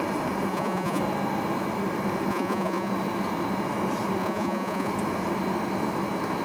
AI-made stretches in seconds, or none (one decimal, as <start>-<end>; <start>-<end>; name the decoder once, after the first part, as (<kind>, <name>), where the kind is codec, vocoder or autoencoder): 0.5-1.0 (vocoder, Vocos); 2.3-2.9; 4.2-4.9